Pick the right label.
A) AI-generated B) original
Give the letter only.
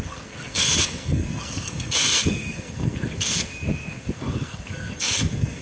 A